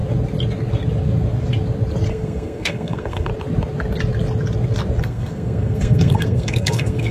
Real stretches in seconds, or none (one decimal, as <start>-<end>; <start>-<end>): 0.0-2.1; 3.3-5.0